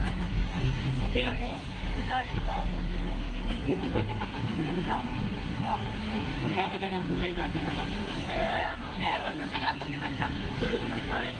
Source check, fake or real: fake